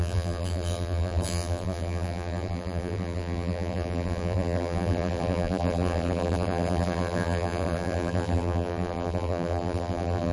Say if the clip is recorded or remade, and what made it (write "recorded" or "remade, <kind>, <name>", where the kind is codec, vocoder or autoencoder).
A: remade, vocoder, BigVGAN v2